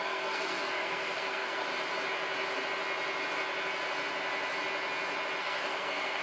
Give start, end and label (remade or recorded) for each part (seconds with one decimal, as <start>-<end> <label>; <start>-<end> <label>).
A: 0.0-1.7 remade; 1.7-5.4 recorded; 5.4-6.2 remade